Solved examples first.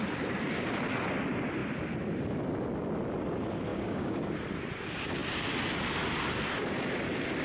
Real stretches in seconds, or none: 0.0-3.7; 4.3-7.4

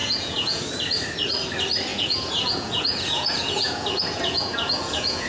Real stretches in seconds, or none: 0.6-1.9

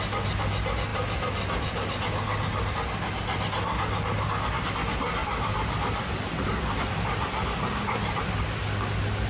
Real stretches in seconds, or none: 0.0-5.2; 8.4-9.3

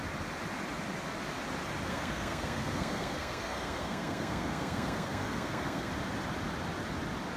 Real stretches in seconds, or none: 0.0-1.9; 5.9-7.4